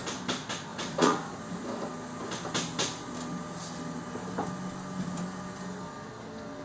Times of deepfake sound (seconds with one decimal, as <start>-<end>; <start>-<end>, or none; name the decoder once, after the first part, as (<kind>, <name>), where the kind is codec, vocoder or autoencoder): 0.7-1.4 (vocoder, Vocos)

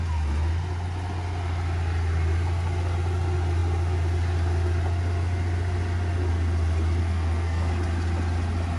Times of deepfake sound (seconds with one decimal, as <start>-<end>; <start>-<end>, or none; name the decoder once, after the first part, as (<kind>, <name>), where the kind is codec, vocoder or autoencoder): 7.0-7.7 (codec, SNAC)